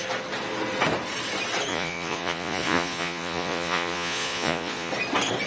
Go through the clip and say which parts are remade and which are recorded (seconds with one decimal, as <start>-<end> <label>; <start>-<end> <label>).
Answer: 0.0-1.7 recorded; 1.7-4.9 remade; 4.9-5.5 recorded